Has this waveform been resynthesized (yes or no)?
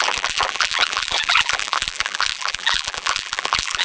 yes